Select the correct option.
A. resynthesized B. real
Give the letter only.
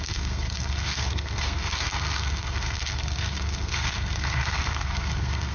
A